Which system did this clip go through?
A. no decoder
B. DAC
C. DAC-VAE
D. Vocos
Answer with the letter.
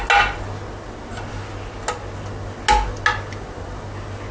A